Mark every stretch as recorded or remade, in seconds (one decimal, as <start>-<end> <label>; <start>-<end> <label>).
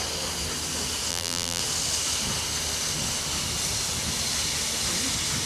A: 0.0-1.1 recorded; 1.1-1.6 remade; 1.6-5.5 recorded